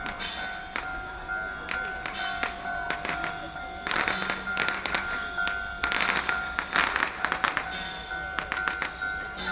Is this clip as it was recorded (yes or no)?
yes